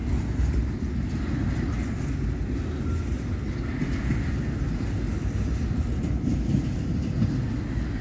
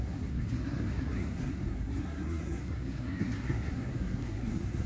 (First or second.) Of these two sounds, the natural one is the first